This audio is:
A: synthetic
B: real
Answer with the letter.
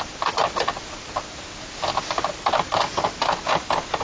B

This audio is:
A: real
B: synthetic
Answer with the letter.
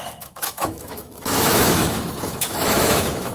B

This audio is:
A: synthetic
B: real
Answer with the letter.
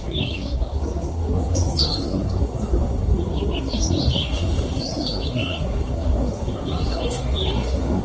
A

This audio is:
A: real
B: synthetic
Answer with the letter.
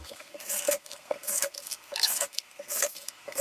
B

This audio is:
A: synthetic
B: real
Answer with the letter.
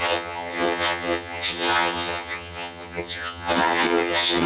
A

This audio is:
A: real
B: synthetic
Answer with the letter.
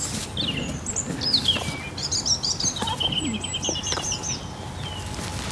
A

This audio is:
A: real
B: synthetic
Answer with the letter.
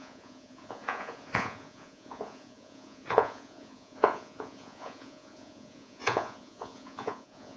B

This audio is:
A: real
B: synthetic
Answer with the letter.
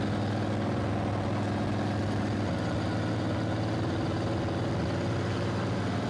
A